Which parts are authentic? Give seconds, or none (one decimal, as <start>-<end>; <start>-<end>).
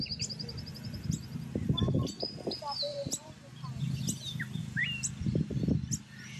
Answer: 0.0-2.9; 4.0-4.6; 5.1-6.4